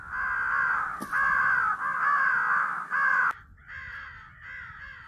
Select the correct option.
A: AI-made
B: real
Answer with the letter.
B